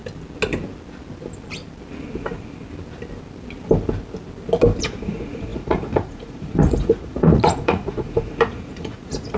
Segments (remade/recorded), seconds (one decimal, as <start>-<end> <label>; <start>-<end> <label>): 0.0-4.8 recorded; 4.8-9.4 remade